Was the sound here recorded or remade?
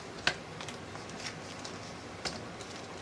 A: recorded